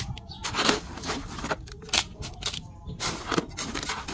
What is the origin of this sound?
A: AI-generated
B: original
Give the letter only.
B